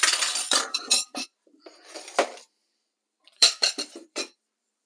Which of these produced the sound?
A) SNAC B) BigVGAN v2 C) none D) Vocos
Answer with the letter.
B